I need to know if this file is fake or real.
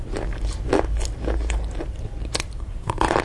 real